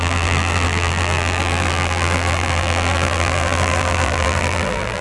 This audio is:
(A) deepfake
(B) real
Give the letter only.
A